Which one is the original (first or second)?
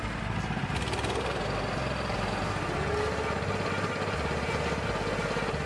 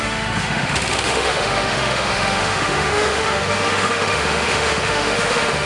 first